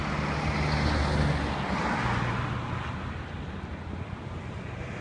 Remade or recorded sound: recorded